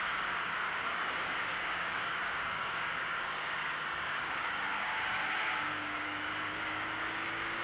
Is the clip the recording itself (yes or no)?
no